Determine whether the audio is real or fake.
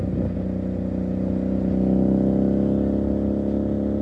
real